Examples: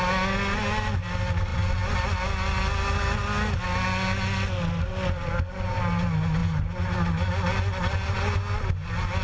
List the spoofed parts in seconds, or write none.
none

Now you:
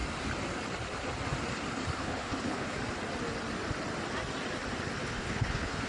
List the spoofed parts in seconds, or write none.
2.0-2.8 (codec, HILCodec); 5.0-5.9

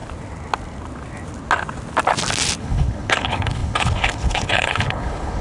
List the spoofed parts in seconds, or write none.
2.6-5.4 (codec, HILCodec)

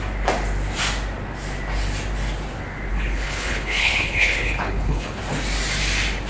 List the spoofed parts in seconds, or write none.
2.9-5.2 (codec, HILCodec)

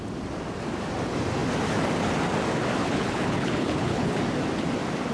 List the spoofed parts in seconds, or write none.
2.8-4.2 (codec, HILCodec)

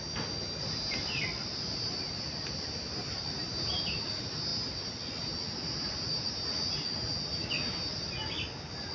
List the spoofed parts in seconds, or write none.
none